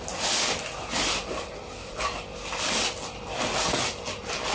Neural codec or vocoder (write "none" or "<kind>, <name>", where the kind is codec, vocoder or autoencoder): none